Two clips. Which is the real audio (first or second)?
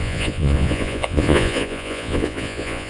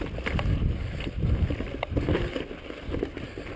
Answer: second